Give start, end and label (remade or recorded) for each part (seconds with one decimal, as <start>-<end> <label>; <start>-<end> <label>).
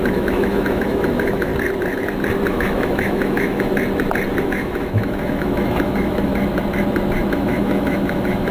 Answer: 0.0-1.5 remade; 1.5-2.5 recorded; 2.5-3.7 remade; 3.7-4.4 recorded; 4.4-6.3 remade; 6.3-7.3 recorded; 7.3-8.5 remade